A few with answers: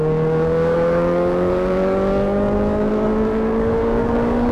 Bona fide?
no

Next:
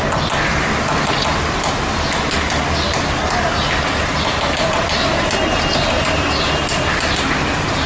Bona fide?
yes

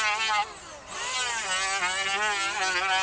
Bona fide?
yes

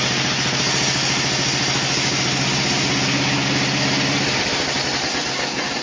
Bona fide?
yes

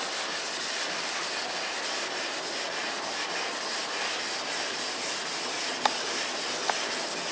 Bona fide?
yes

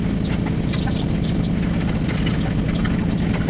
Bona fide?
yes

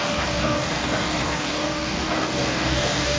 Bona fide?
no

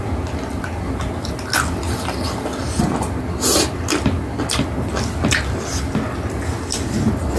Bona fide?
yes